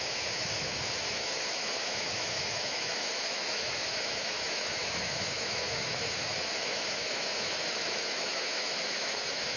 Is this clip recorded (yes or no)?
no